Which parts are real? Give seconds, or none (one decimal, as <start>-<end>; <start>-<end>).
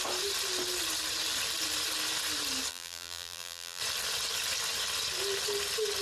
0.0-2.7; 3.8-6.0